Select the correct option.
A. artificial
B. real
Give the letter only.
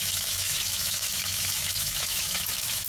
A